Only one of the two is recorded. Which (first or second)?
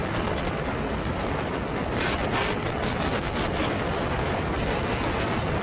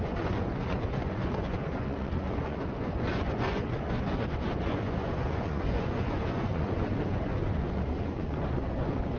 first